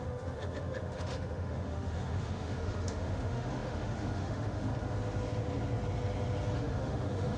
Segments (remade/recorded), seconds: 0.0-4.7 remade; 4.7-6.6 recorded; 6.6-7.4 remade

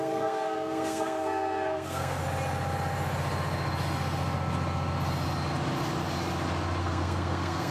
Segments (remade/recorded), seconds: 0.0-2.2 remade; 2.2-6.8 recorded; 6.8-7.7 remade

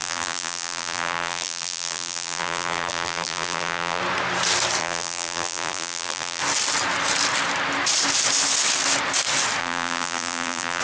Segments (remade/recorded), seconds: 0.0-4.0 remade; 4.0-4.8 recorded; 4.8-6.4 remade; 6.4-9.6 recorded; 9.6-10.8 remade